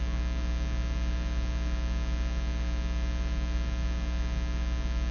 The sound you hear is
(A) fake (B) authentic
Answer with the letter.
B